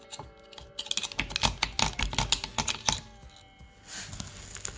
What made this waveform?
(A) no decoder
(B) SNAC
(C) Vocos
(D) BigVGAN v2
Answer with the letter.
A